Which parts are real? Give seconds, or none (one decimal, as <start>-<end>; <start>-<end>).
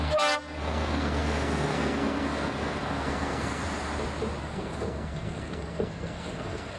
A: 3.6-4.4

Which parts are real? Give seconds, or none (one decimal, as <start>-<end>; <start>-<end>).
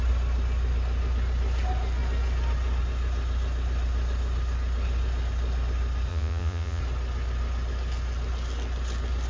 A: 0.0-6.1; 6.8-9.3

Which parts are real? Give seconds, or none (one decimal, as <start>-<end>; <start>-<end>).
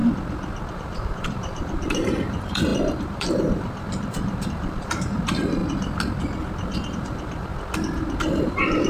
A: 0.0-0.7; 5.6-6.9; 7.5-8.5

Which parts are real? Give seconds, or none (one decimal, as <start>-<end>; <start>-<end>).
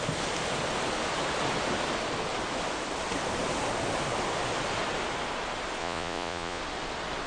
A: 0.0-5.8; 6.6-7.3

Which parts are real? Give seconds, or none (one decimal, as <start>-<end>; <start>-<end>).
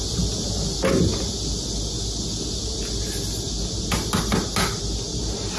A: 0.0-5.6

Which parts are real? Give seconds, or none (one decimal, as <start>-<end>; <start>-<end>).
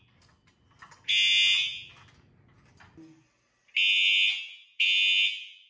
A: 0.0-5.7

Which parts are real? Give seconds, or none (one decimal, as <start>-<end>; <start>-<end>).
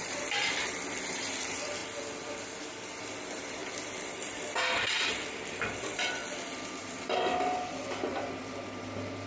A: 6.2-6.8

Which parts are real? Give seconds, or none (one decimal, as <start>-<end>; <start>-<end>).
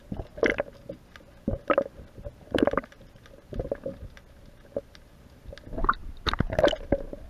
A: 0.0-7.3